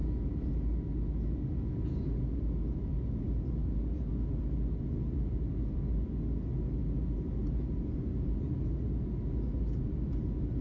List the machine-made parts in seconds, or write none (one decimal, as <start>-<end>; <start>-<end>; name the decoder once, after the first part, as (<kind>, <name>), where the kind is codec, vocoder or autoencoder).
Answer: none